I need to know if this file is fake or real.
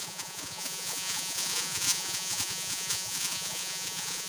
fake